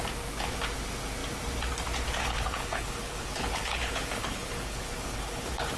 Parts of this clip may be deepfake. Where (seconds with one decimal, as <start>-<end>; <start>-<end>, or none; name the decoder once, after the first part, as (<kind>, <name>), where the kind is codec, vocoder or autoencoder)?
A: 2.2-5.8 (codec, HILCodec)